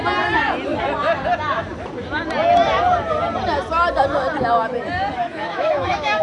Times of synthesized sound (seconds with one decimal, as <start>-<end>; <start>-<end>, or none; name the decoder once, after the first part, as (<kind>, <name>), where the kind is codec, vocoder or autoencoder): 5.3-6.2 (autoencoder, DAC-VAE)

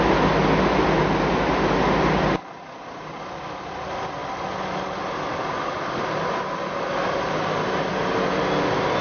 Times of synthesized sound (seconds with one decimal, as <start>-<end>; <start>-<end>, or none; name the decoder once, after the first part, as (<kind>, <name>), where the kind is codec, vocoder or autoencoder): none

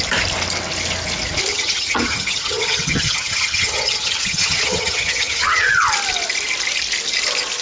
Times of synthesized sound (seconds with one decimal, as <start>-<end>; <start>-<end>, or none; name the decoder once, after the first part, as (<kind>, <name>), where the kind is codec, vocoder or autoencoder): 1.5-5.7 (vocoder, HiFi-GAN)